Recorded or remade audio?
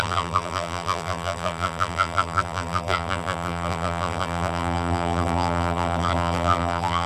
remade